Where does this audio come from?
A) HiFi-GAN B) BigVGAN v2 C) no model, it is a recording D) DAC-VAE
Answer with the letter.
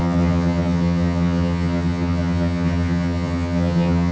A